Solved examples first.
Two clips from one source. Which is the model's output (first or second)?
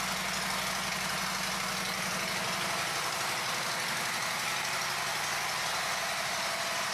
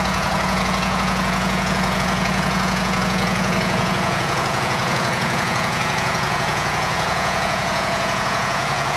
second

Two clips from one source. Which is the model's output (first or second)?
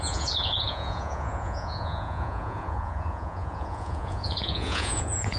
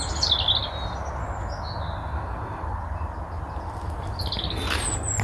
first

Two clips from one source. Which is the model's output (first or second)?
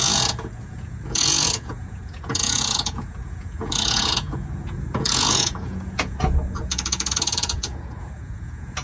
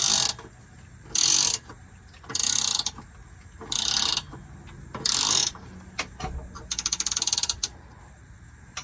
first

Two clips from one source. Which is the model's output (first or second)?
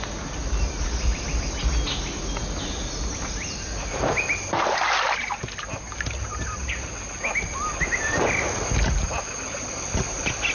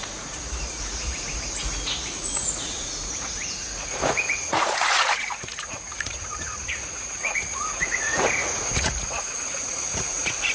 second